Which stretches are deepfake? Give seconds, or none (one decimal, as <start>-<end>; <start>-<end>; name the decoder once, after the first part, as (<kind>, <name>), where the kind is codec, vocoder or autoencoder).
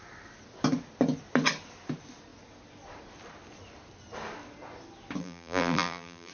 5.2-6.3 (vocoder, BigVGAN v2)